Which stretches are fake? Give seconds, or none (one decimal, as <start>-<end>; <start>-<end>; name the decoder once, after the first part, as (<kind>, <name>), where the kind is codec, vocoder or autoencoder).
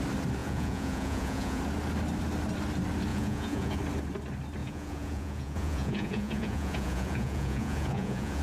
0.4-1.6 (vocoder, Vocos); 3.1-3.8; 4.6-8.4